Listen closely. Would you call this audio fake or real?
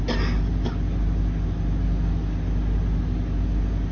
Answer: real